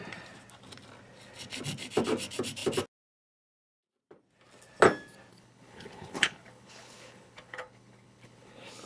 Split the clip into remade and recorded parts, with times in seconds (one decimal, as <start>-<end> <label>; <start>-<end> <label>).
0.0-5.3 recorded; 5.3-8.9 remade